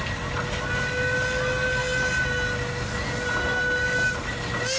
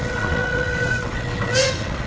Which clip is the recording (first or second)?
first